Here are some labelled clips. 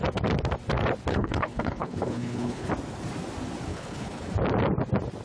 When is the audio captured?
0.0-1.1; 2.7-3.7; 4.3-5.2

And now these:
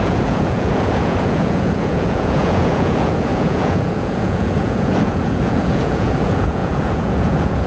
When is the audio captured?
none